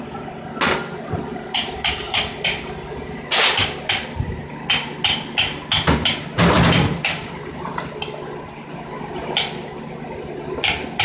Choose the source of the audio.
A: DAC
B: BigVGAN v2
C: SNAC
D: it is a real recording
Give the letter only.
D